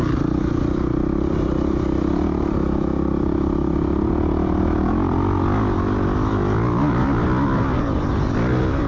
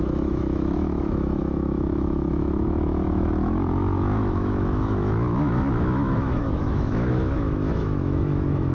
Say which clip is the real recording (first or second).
first